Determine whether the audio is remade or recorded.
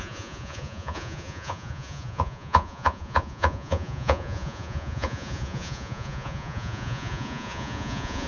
remade